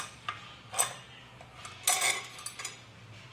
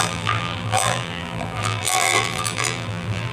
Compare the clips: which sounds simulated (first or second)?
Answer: second